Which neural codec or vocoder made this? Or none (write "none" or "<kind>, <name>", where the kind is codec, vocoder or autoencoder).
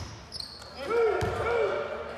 none